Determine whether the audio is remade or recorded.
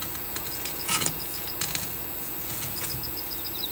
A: remade